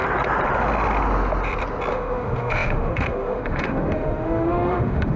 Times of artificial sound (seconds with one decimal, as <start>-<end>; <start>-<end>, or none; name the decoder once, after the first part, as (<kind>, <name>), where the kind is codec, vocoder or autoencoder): 1.9-5.2 (autoencoder, DAC-VAE)